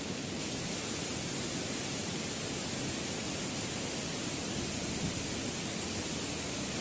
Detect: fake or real real